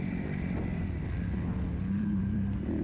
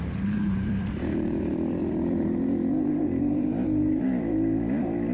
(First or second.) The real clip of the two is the first